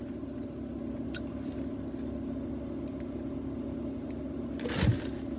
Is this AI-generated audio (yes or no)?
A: no